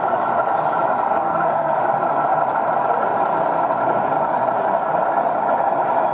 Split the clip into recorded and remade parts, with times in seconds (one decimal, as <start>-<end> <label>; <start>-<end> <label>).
0.0-1.2 recorded; 1.2-1.8 remade; 1.8-6.1 recorded